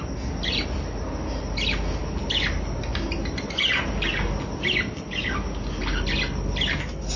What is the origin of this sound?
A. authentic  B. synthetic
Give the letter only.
A